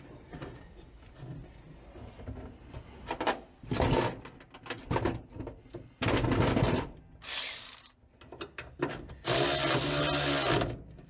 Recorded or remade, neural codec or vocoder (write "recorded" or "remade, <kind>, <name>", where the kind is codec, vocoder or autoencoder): recorded